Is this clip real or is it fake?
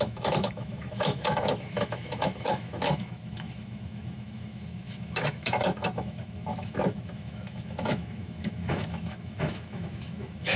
fake